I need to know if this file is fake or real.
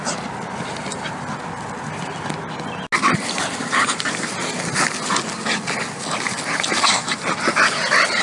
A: real